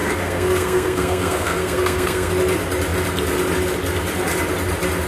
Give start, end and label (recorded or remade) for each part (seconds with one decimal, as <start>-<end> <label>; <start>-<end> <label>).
0.0-2.3 remade; 2.3-5.1 recorded